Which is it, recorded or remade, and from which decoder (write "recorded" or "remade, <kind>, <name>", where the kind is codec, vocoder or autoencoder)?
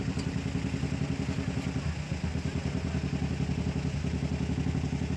recorded